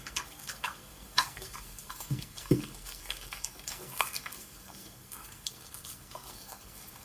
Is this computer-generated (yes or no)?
yes